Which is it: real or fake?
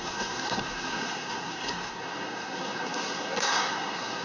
fake